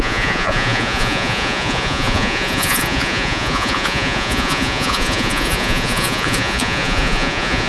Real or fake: fake